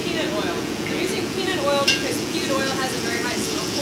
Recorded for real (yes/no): no